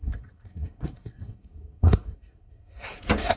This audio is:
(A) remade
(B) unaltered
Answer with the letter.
A